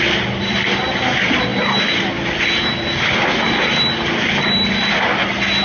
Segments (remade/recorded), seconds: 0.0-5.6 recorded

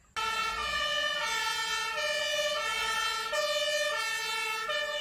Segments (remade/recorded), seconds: 0.0-5.0 recorded

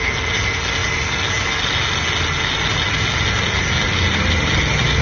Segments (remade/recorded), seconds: 0.0-5.0 recorded

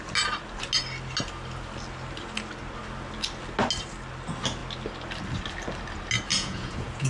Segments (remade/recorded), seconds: 0.0-6.3 recorded; 6.3-7.1 remade

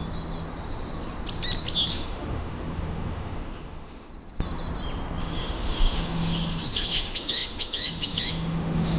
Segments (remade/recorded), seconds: 0.0-1.9 recorded; 1.9-4.1 remade; 4.1-5.2 recorded; 5.2-9.0 remade